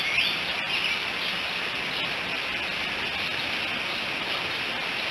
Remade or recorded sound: recorded